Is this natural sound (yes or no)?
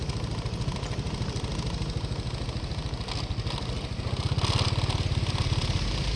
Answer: yes